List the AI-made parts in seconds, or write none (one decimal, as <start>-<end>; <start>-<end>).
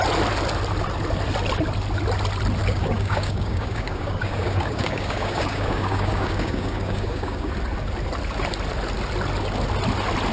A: 2.6-7.5